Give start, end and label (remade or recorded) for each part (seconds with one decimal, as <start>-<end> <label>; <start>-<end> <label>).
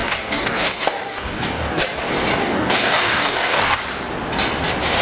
0.0-1.8 remade; 1.8-2.4 recorded; 2.4-3.8 remade; 3.8-5.0 recorded